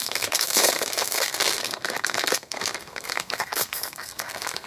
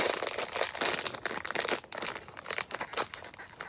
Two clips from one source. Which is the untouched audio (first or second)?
second